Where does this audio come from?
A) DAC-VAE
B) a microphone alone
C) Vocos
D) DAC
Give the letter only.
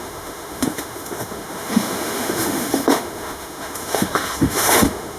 A